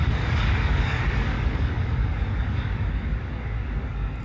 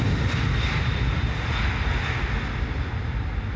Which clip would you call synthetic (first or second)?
first